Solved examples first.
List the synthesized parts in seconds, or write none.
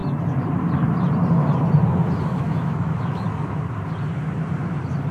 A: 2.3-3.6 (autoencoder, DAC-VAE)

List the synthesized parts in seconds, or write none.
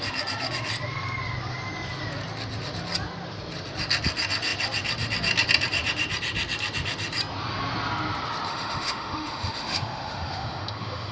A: 8.5-11.1 (autoencoder, DAC-VAE)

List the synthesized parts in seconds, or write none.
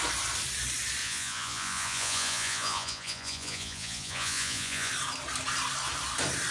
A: 1.0-4.9 (vocoder, Vocos)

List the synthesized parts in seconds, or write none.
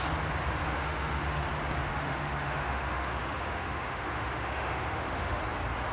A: 0.6-1.5 (autoencoder, DAC-VAE); 1.9-5.4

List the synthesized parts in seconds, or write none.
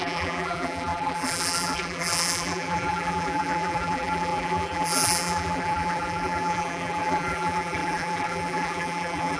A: 0.0-9.4 (vocoder, BigVGAN v2)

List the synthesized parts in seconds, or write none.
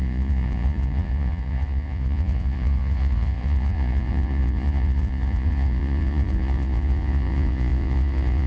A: 0.0-8.5 (vocoder, Vocos)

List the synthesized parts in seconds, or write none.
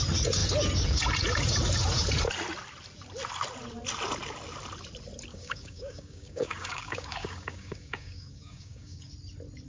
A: 5.3-9.1 (codec, DAC)